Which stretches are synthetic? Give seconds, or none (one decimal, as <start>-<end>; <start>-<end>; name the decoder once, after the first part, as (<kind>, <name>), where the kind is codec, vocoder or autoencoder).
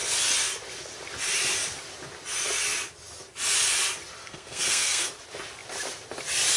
4.2-5.1 (codec, SNAC)